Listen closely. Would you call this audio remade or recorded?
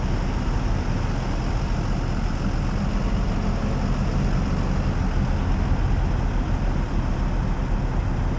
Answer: recorded